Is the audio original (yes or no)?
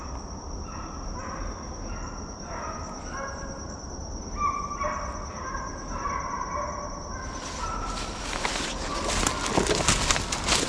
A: yes